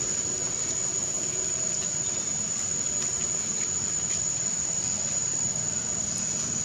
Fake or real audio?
real